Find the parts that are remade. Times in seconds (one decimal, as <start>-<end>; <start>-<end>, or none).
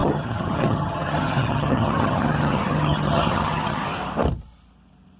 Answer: 0.0-3.8